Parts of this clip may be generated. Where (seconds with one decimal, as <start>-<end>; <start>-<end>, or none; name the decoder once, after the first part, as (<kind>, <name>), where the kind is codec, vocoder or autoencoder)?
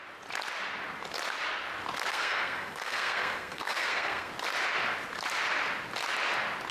2.1-4.3 (codec, SNAC)